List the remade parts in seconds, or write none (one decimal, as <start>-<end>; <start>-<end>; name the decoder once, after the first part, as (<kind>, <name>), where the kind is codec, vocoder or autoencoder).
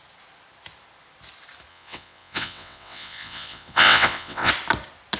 1.7-4.5 (vocoder, WaveNeXt)